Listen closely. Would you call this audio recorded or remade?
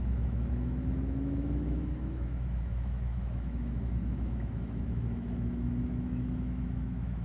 remade